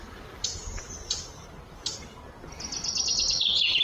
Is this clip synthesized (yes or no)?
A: no